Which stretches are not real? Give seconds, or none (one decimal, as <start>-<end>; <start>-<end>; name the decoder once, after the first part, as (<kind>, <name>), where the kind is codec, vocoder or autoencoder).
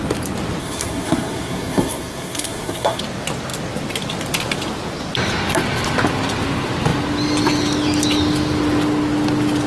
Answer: 0.6-3.0 (codec, SNAC)